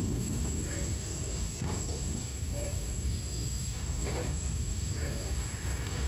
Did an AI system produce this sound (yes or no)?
yes